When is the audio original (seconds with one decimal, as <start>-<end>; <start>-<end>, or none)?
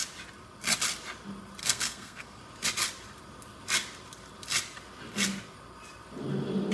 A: 0.0-1.6; 2.4-6.7